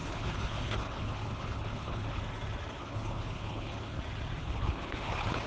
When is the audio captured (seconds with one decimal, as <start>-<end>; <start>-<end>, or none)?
2.2-2.8; 4.0-4.4